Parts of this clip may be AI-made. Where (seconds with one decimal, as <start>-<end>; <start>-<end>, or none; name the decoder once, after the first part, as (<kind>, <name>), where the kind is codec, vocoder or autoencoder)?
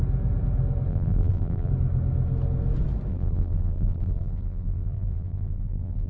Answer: 0.9-1.7 (vocoder, BigVGAN v2); 3.1-6.1